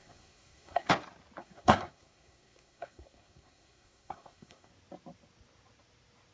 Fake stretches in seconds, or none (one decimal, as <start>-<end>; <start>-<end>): 0.0-0.9; 1.4-4.7